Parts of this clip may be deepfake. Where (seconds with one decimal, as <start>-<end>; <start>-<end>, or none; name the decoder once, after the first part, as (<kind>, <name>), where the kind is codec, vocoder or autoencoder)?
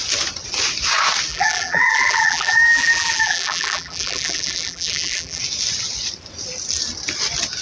1.3-5.4 (vocoder, BigVGAN v2)